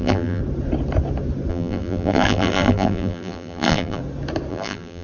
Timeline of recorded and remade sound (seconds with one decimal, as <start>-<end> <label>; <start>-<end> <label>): 0.0-0.4 remade; 0.4-1.5 recorded; 1.5-4.0 remade; 4.0-4.5 recorded; 4.5-5.0 remade